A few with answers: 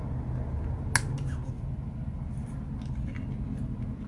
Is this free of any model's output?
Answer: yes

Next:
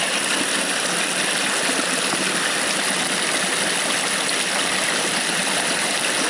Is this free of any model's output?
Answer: yes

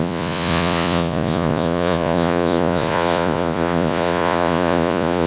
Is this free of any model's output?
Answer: no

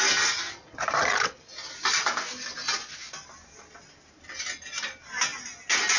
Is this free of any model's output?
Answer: yes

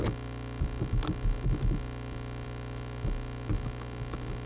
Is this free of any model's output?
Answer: yes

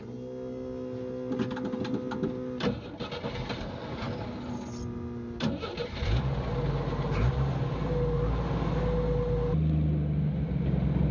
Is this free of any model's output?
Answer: yes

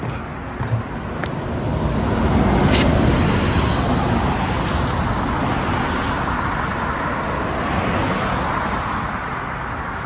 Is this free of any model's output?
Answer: yes